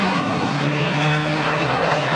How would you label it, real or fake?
fake